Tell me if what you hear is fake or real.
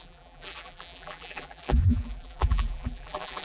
fake